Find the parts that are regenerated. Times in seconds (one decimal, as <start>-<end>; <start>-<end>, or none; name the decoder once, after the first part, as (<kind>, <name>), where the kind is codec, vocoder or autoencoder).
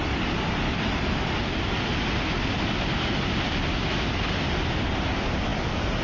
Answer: none